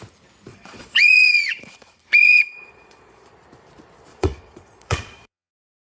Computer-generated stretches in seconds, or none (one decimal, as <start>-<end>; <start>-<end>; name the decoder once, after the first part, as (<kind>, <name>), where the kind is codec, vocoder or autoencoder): 0.5-3.3 (vocoder, Vocos); 4.1-5.5